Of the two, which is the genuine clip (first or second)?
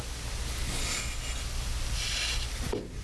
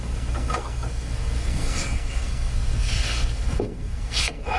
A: first